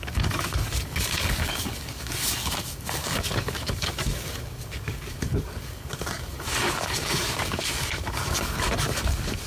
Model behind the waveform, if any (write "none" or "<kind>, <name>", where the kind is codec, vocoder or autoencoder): codec, DAC